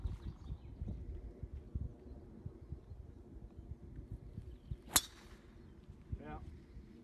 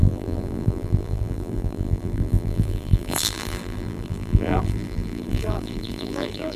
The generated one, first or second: second